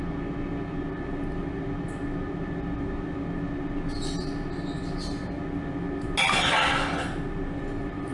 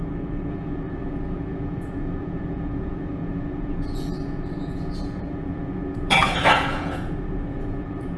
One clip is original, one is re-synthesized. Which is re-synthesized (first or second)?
second